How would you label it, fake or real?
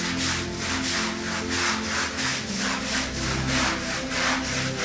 real